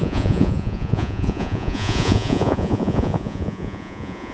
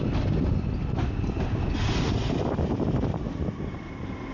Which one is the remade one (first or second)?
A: first